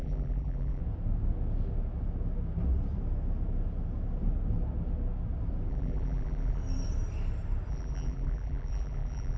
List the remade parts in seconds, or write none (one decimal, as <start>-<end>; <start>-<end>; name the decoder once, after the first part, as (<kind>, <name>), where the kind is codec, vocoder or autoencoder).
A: 0.0-0.8 (vocoder, BigVGAN v2); 5.7-6.6; 7.7-9.4